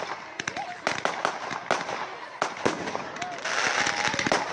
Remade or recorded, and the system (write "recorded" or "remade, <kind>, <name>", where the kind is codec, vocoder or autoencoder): recorded